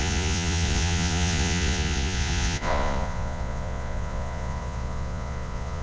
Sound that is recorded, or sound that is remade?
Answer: remade